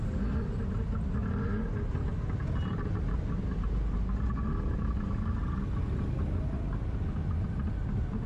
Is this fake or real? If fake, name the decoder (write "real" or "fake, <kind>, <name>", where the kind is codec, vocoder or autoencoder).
real